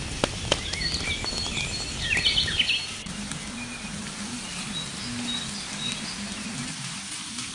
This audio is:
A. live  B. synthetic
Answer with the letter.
B